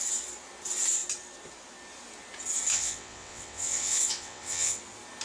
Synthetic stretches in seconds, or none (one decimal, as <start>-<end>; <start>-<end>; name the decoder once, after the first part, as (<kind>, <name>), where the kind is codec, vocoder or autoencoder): 2.7-4.8 (vocoder, WaveNeXt)